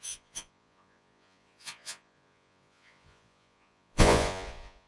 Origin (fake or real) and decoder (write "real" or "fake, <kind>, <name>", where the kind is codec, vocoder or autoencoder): fake, vocoder, Vocos